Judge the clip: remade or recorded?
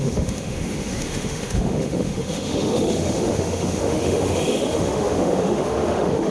remade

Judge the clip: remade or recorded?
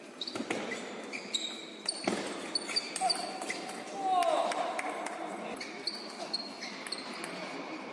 recorded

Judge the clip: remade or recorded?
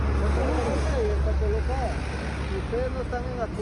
recorded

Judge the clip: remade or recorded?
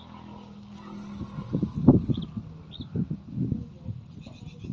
recorded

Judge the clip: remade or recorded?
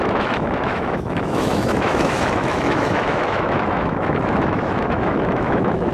remade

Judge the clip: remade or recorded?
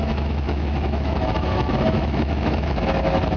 remade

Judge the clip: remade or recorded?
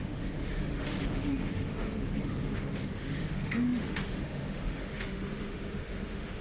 remade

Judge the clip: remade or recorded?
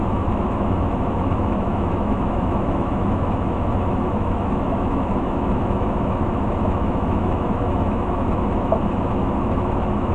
remade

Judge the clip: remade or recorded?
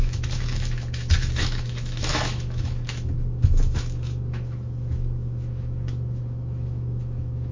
remade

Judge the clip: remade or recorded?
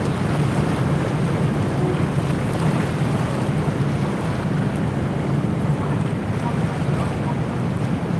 recorded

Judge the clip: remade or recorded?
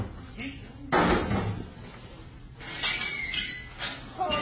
recorded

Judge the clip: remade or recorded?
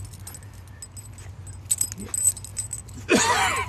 recorded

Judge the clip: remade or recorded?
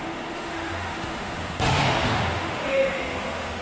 remade